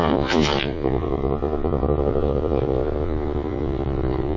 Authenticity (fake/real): fake